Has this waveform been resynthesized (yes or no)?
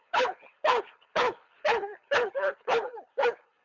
yes